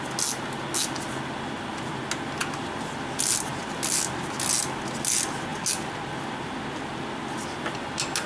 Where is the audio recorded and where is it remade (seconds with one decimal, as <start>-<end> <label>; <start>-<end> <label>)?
0.0-8.3 recorded